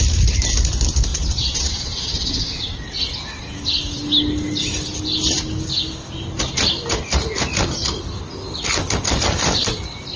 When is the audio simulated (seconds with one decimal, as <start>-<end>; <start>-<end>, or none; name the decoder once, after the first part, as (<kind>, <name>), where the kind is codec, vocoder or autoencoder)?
1.1-2.9 (vocoder, WaveNeXt)